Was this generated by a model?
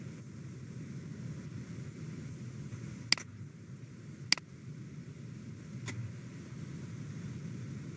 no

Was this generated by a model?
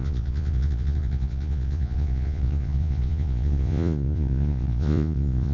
yes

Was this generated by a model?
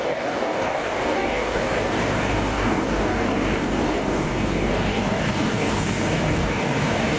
yes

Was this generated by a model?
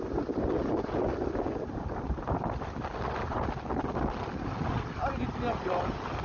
no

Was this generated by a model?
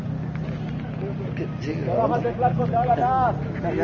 no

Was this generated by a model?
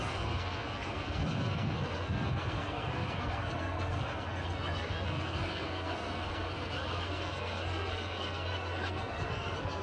yes